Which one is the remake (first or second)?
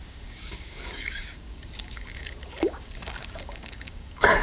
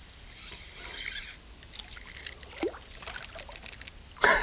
first